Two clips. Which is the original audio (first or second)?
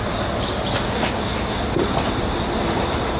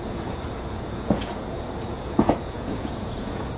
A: first